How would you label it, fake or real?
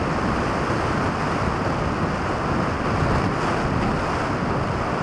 real